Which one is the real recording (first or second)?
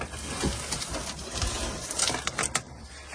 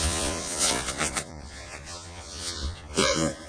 first